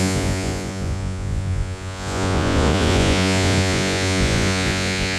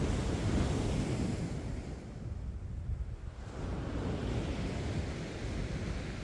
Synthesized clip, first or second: first